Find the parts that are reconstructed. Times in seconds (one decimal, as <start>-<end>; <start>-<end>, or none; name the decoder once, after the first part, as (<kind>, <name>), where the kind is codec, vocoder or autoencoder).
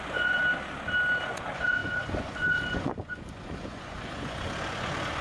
0.0-0.4 (vocoder, Vocos); 1.2-5.2